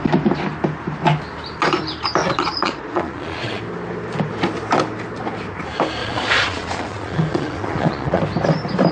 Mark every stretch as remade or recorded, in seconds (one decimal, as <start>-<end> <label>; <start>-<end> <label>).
0.0-2.2 recorded; 2.2-3.6 remade; 3.6-6.0 recorded; 6.0-8.2 remade; 8.2-8.9 recorded